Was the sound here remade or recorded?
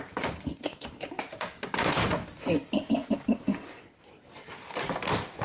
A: recorded